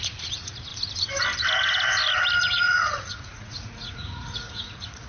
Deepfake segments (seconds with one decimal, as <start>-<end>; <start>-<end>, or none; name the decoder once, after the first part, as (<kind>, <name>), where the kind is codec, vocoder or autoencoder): 0.0-0.7 (vocoder, Vocos); 2.4-5.1